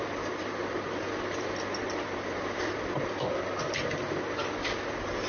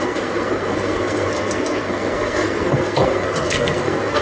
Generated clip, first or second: second